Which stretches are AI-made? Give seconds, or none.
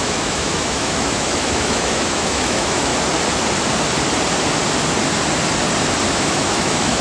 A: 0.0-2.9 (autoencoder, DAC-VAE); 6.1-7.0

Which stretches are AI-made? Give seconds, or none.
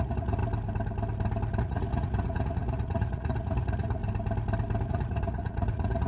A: 0.0-0.4 (vocoder, Vocos); 1.6-4.0; 4.9-6.1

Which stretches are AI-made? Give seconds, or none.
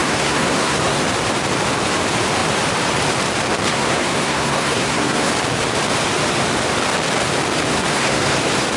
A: 0.0-1.0 (codec, SNAC); 3.7-5.3; 7.7-8.3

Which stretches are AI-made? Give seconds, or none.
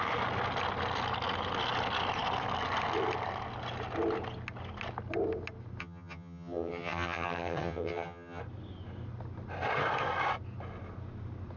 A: 5.8-8.4 (vocoder, HiFi-GAN)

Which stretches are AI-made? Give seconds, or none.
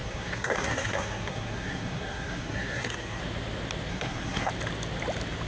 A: 0.0-3.2 (codec, SNAC); 3.9-4.5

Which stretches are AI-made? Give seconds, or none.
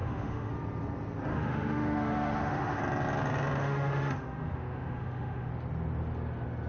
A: 0.0-0.5 (autoencoder, DAC-VAE); 1.3-2.8; 3.6-5.5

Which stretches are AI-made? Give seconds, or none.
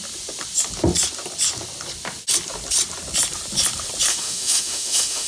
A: 4.1-5.3 (autoencoder, DAC-VAE)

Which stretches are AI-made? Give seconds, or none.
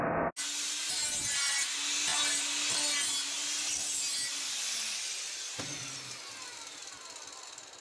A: none